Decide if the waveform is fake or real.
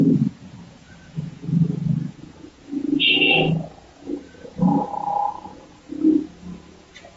fake